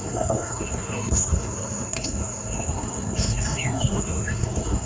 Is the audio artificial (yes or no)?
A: yes